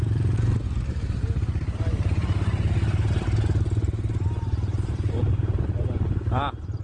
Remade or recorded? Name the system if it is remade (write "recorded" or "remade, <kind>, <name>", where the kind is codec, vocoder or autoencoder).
recorded